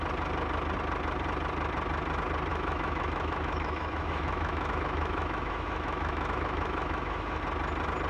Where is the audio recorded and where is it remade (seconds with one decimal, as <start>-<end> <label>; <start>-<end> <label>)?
0.0-2.5 recorded; 2.5-7.4 remade; 7.4-8.1 recorded